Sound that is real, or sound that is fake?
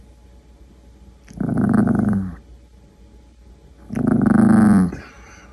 real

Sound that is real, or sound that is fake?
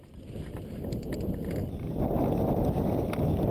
real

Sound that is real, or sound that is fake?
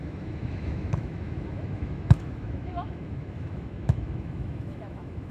fake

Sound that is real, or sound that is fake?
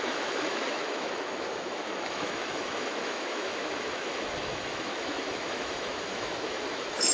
fake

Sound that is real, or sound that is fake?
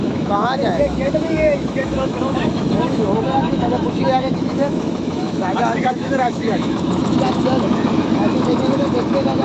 fake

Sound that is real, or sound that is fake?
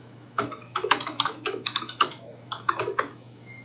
fake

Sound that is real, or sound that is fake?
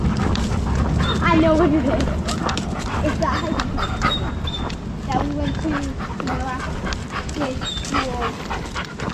real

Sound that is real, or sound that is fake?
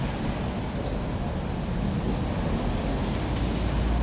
real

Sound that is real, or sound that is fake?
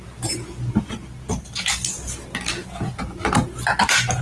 real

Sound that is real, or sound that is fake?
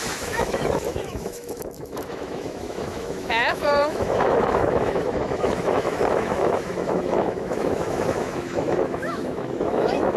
fake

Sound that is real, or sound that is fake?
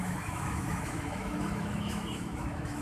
fake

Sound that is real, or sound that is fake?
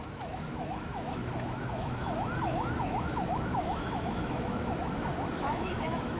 fake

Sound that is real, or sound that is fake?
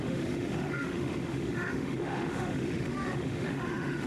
fake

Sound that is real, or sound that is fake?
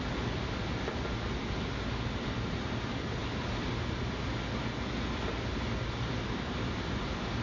real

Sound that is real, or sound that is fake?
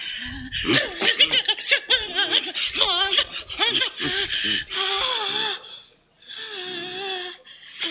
real